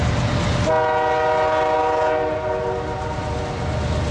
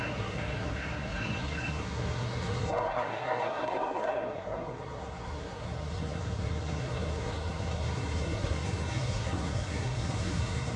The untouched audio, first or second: first